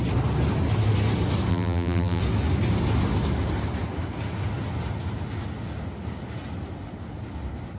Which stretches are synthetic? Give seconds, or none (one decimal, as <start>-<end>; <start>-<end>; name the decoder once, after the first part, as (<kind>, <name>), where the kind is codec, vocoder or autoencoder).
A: 1.5-2.2 (vocoder, BigVGAN v2)